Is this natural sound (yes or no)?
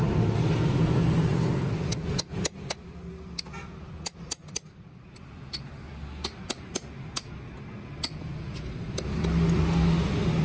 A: yes